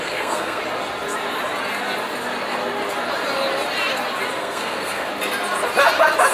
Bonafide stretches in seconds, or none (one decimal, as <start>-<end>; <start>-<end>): 0.6-4.4; 5.1-6.3